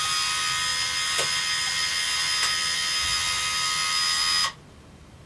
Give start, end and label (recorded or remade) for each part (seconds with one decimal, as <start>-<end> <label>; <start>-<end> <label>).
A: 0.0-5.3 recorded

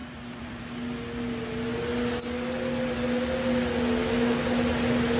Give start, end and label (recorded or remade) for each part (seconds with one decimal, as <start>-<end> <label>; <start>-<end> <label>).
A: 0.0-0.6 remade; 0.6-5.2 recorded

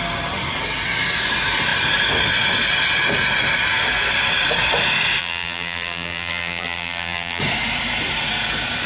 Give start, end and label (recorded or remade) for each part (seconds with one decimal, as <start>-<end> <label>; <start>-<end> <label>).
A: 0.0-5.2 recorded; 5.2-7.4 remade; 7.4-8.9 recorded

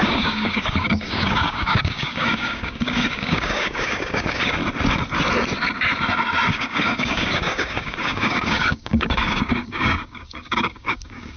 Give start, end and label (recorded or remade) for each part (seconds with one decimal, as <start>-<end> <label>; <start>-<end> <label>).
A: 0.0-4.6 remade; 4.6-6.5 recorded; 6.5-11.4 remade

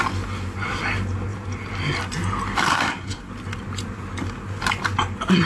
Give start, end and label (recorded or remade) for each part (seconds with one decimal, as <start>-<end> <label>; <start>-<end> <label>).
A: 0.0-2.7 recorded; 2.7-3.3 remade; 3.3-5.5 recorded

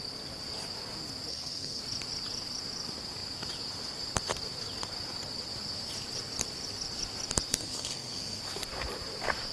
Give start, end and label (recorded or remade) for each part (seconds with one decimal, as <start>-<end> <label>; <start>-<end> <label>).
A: 0.0-1.3 recorded; 1.3-1.8 remade; 1.8-7.5 recorded; 7.5-8.4 remade; 8.4-9.5 recorded

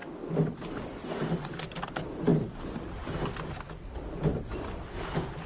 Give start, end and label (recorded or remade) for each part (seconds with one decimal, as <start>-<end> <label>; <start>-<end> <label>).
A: 0.0-5.5 recorded

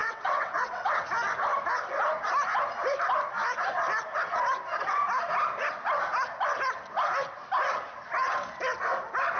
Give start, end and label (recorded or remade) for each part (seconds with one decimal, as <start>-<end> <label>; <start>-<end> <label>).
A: 0.0-1.1 remade; 1.1-9.4 recorded